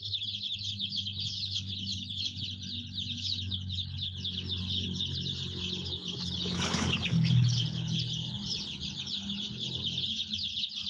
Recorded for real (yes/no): no